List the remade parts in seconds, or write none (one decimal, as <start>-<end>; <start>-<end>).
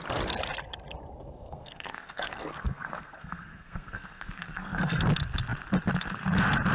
1.4-5.0